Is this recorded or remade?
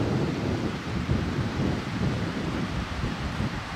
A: remade